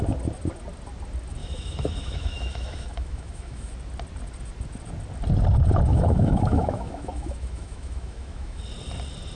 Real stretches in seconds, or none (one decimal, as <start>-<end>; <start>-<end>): 0.0-1.4; 3.7-5.9; 8.6-9.4